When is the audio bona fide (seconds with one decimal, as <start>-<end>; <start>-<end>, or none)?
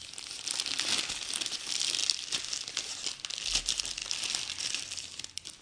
0.0-5.6